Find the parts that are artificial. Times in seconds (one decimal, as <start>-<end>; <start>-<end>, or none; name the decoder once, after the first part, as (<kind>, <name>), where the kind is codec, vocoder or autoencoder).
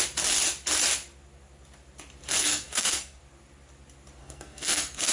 2.4-3.2 (codec, SNAC); 4.2-5.1